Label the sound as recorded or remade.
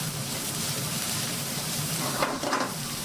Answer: remade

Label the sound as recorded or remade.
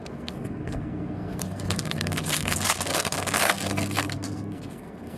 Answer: remade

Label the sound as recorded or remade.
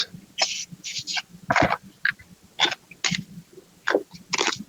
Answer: recorded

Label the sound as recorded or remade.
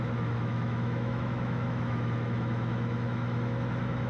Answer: remade